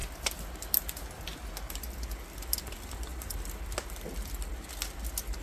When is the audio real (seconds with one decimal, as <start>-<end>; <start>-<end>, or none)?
0.0-5.4